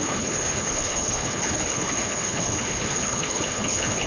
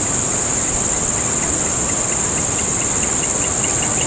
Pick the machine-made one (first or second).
first